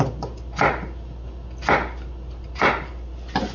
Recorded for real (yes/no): yes